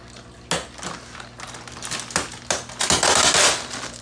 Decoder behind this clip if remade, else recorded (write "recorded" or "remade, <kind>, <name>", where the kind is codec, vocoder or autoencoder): recorded